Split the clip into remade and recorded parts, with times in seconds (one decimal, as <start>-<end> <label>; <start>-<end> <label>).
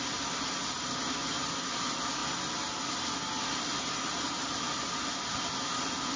0.0-6.2 recorded